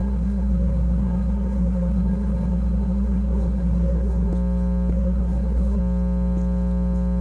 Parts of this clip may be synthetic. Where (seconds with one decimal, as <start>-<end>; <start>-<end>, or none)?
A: 0.0-4.3; 4.9-5.8